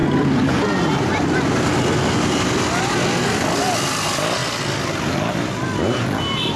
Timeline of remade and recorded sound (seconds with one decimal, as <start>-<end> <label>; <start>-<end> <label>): 0.0-6.6 recorded